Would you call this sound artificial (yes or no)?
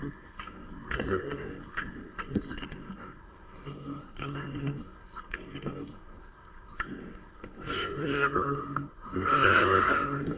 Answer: yes